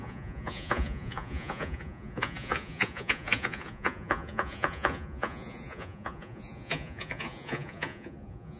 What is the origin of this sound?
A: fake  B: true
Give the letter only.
A